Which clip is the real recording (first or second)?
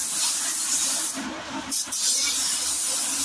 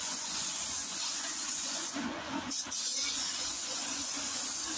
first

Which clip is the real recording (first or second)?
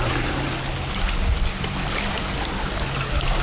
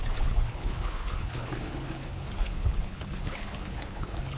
first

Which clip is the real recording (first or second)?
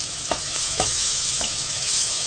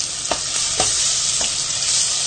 second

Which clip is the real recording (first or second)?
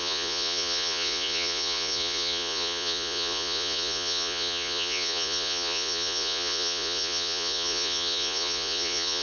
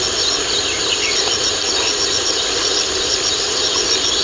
second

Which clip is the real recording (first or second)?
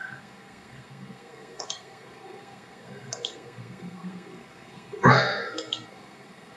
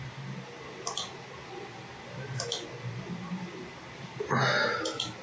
second